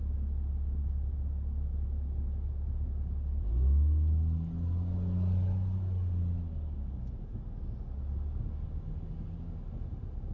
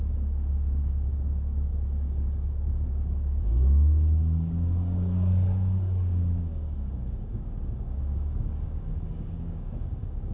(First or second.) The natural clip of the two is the first